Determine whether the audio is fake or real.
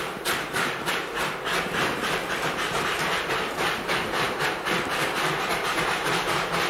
fake